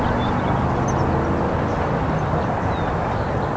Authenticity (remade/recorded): recorded